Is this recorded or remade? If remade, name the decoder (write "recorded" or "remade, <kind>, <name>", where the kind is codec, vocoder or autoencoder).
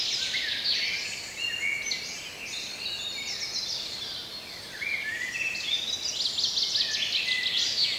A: recorded